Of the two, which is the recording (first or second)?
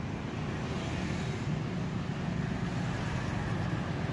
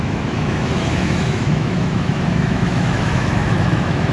first